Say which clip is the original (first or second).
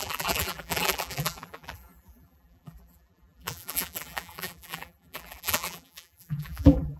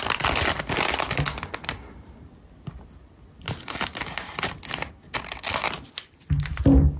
second